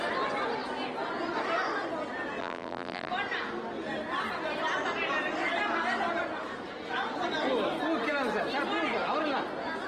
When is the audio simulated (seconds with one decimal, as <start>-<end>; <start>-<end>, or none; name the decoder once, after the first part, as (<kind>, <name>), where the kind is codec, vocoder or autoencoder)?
2.4-3.1 (vocoder, BigVGAN v2)